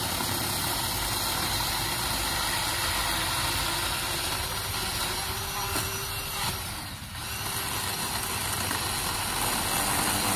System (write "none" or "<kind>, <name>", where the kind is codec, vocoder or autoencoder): none